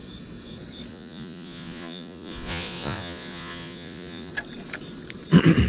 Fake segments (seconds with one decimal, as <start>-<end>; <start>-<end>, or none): 0.9-4.3